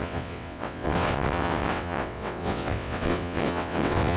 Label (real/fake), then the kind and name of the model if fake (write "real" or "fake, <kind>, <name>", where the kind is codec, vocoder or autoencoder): fake, vocoder, WaveNeXt